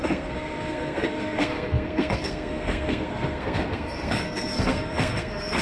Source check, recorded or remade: remade